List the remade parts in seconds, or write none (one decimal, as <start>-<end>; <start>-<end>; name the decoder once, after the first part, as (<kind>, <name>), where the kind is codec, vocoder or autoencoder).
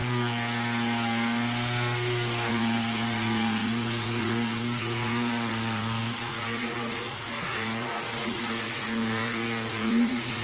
2.5-10.4 (vocoder, Vocos)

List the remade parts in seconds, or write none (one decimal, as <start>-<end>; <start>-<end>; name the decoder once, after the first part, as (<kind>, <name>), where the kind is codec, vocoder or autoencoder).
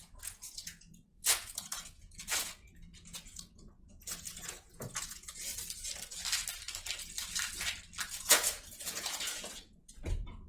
0.0-5.5 (vocoder, Vocos); 8.2-10.5